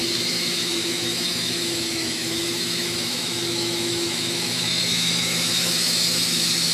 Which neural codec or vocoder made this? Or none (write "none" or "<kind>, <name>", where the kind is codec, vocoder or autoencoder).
autoencoder, DAC-VAE